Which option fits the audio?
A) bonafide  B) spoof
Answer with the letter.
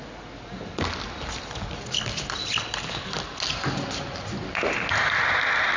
A